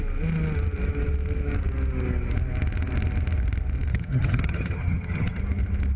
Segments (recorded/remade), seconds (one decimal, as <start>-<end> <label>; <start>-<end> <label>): 0.0-3.9 recorded; 3.9-5.4 remade; 5.4-6.0 recorded